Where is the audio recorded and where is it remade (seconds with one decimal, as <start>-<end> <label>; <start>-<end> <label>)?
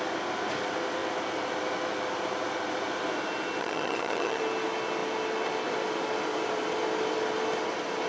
0.0-3.6 recorded; 3.6-4.4 remade; 4.4-8.1 recorded